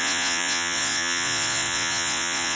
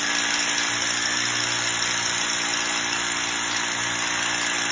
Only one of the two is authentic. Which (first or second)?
second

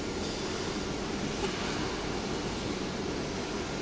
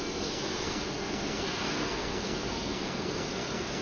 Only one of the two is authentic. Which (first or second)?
first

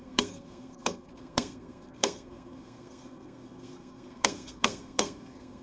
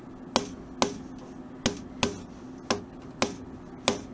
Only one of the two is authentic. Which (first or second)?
second